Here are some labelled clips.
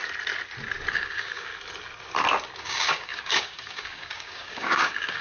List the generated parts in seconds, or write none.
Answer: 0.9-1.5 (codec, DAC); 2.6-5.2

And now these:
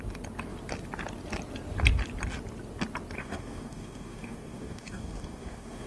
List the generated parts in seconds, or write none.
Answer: 3.2-5.9 (codec, DAC)

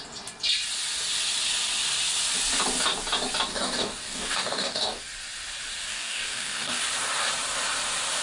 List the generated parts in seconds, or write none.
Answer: 3.5-5.0 (codec, DAC); 5.9-6.8

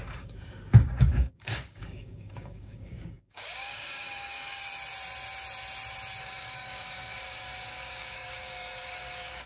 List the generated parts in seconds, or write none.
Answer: 0.0-4.6 (codec, DAC); 6.2-9.5

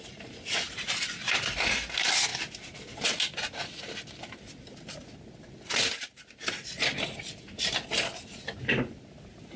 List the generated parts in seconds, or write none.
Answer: none

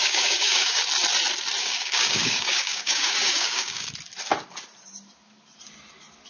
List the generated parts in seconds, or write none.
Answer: 0.0-0.8 (codec, DAC); 1.6-3.9

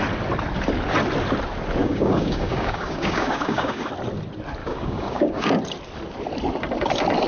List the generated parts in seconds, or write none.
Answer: 1.8-3.9 (codec, DAC); 4.6-5.6